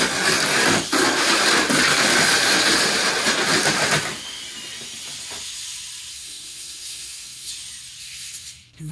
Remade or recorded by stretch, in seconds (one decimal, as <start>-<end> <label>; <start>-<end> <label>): 0.0-6.1 recorded; 6.1-7.5 remade; 7.5-8.0 recorded; 8.0-8.9 remade